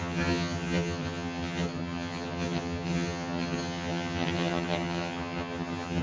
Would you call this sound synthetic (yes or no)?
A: yes